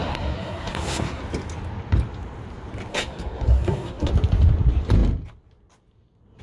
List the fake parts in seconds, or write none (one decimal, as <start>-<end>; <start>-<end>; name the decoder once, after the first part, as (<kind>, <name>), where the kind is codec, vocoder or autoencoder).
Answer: 0.0-1.2 (codec, SNAC); 2.9-4.1